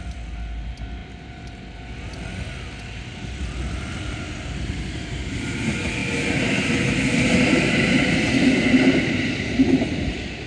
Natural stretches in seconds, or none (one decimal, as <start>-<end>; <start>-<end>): 0.0-10.5

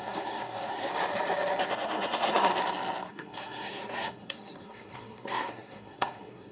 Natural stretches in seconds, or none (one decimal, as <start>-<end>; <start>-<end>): 0.9-1.7; 2.5-3.1

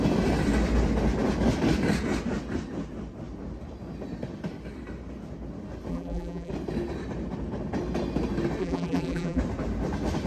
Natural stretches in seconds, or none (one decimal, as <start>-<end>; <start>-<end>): 0.0-5.9; 6.5-8.6; 9.4-10.3

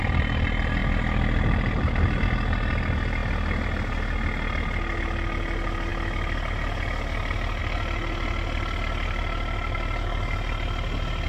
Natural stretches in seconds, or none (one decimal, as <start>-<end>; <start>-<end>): 0.0-0.8; 2.2-11.3

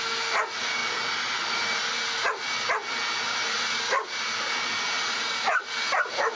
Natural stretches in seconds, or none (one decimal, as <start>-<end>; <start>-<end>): 0.0-6.4

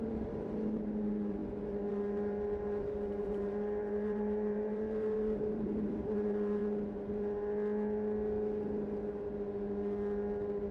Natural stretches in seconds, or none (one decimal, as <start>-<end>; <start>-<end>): 1.4-1.9; 6.6-10.7

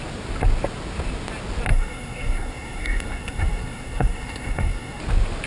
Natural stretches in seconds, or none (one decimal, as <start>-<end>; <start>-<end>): 0.0-1.7; 5.0-5.5

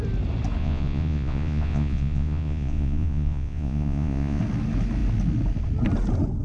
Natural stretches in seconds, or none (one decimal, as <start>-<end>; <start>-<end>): 0.0-0.6; 4.4-6.4